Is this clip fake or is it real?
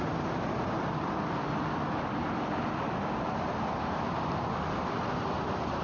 real